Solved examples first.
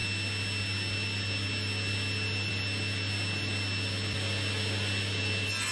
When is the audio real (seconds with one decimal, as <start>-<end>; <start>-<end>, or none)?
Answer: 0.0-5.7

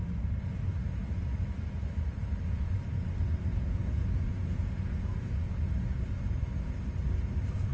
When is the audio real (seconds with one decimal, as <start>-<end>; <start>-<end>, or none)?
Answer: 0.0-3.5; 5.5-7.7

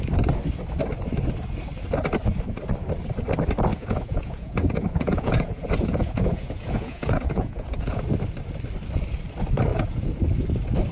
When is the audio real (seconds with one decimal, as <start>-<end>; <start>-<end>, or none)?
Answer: 0.0-3.7; 8.0-9.7; 10.2-10.9

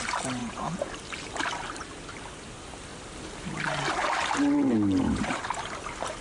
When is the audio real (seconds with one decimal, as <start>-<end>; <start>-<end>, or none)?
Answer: 0.0-0.4; 0.9-6.2

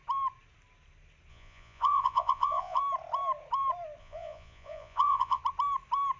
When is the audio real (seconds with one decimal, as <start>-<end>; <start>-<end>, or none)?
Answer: 0.0-1.3; 2.8-4.0; 5.4-6.2